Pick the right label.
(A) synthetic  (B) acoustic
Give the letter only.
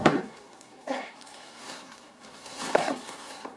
A